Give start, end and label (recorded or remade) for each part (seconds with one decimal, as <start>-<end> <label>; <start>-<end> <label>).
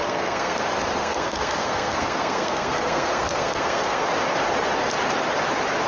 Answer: 0.0-0.6 remade; 0.6-1.0 recorded; 1.0-4.0 remade; 4.0-5.9 recorded